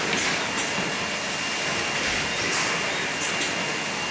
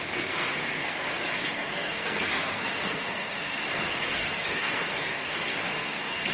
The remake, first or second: second